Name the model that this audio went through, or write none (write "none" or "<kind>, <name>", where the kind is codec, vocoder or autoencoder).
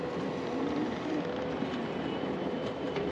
vocoder, BigVGAN v2